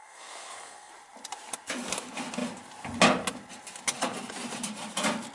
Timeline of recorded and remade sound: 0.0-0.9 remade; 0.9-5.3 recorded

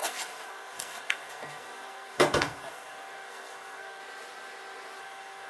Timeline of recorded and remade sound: 0.0-4.0 remade; 4.0-5.0 recorded; 5.0-5.5 remade